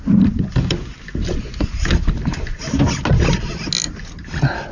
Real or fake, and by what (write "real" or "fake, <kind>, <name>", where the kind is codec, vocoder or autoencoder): real